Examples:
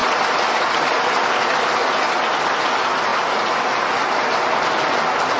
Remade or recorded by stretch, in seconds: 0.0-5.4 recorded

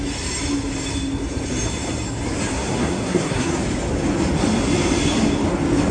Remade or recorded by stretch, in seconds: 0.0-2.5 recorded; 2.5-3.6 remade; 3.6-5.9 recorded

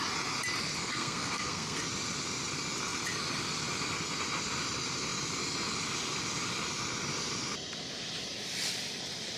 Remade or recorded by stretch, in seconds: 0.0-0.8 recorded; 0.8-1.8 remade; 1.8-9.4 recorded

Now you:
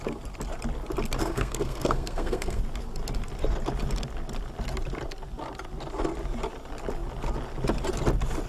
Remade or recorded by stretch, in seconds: 0.0-1.2 recorded; 1.2-2.6 remade; 2.6-8.5 recorded

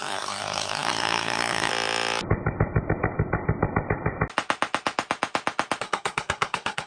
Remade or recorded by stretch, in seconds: 0.0-1.7 remade; 1.7-5.8 recorded; 5.8-6.9 remade

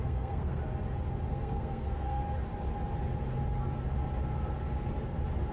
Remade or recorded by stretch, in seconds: 0.0-0.6 remade; 0.6-1.3 recorded; 1.3-2.2 remade; 2.2-5.5 recorded

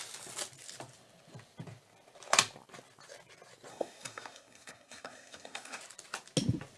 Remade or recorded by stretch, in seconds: 0.0-3.7 recorded; 3.7-5.8 remade; 5.8-6.8 recorded

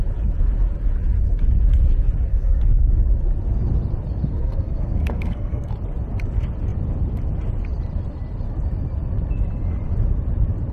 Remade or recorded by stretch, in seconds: 0.0-2.3 recorded; 2.3-2.8 remade; 2.8-4.3 recorded; 4.3-5.7 remade; 5.7-10.7 recorded